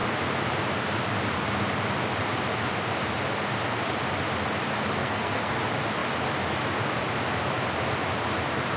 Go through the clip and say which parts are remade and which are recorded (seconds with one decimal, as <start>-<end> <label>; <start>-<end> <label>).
0.0-5.0 recorded; 5.0-5.6 remade; 5.6-8.8 recorded